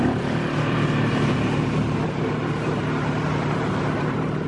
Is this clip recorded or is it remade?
remade